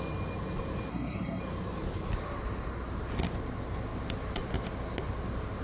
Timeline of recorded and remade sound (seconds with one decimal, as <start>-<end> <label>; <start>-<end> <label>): 0.0-0.9 recorded; 0.9-1.4 remade; 1.4-5.6 recorded